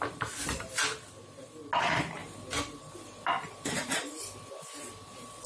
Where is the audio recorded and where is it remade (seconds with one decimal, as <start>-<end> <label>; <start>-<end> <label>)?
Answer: 0.0-5.5 recorded